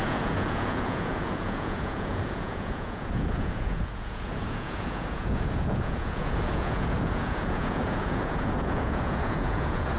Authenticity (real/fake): fake